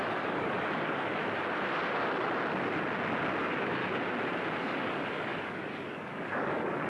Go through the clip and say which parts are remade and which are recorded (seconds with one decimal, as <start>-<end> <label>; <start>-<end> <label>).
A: 0.0-1.2 remade; 1.2-3.4 recorded; 3.4-3.8 remade; 3.8-4.6 recorded; 4.6-6.9 remade